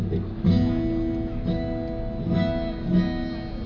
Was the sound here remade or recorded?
recorded